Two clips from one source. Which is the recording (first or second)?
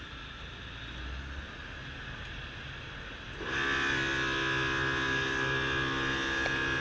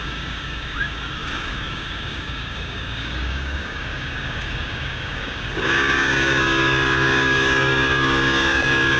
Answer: first